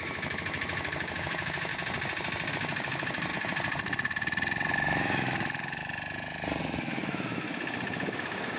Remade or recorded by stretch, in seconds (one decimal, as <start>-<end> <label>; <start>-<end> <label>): 0.0-1.7 remade; 1.7-2.5 recorded; 2.5-3.3 remade; 3.3-4.7 recorded; 4.7-5.8 remade; 5.8-6.6 recorded; 6.6-8.6 remade